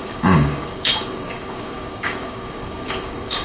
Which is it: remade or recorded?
remade